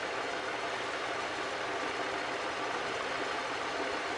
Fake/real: real